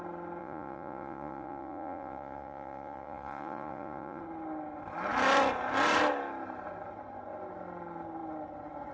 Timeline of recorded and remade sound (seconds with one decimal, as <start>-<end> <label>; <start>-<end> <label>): 0.0-0.4 recorded; 0.4-4.2 remade; 4.2-8.9 recorded